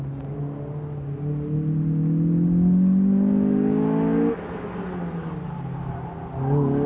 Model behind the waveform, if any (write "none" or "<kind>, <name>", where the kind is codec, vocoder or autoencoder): none